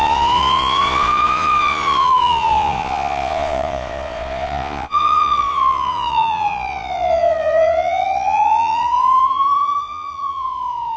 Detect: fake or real fake